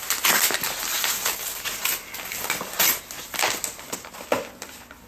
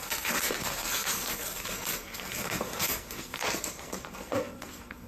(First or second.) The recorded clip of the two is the first